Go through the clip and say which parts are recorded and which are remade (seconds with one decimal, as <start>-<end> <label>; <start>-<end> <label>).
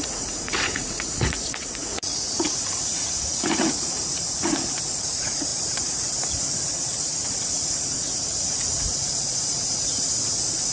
0.0-10.7 remade